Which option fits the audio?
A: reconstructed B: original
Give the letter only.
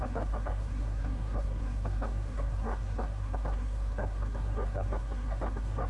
A